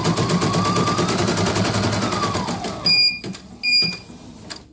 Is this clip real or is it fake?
real